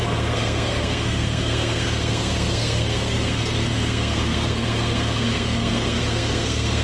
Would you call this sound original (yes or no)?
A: no